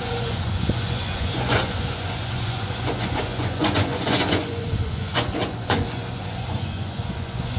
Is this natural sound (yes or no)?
no